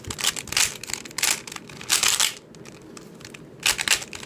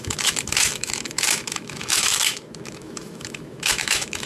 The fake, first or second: second